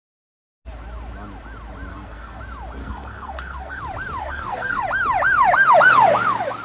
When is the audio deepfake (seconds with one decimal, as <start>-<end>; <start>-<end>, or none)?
1.9-2.4; 2.8-3.8; 4.2-4.8